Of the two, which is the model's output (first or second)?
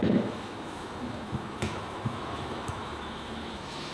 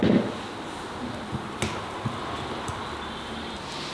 first